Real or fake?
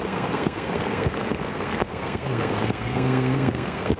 fake